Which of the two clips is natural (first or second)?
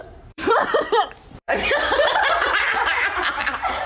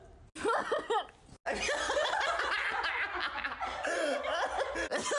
second